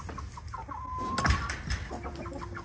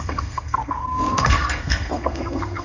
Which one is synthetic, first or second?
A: second